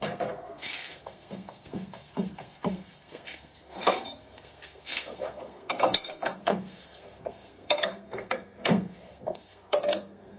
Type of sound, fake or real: fake